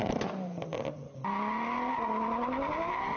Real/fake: real